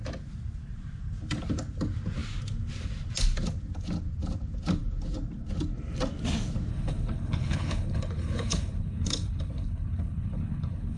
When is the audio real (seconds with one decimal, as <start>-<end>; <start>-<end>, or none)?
0.0-6.7